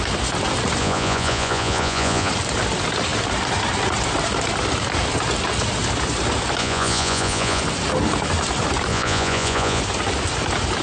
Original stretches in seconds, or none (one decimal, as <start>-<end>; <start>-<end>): 0.0-0.8; 2.3-6.6; 7.6-8.9; 9.8-10.8